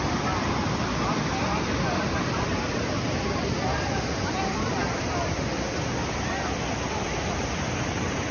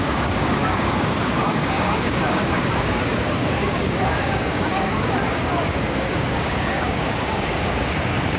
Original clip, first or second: first